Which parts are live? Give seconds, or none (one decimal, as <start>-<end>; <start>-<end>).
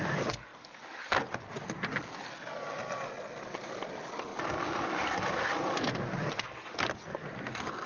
0.0-7.9